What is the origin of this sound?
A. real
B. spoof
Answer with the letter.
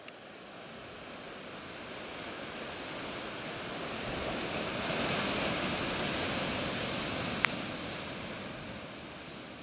A